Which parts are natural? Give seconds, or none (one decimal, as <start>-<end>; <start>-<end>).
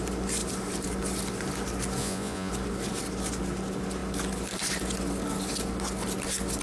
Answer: 0.0-2.0; 2.5-6.6